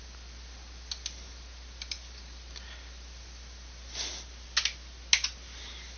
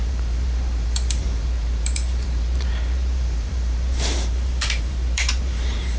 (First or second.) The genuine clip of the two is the first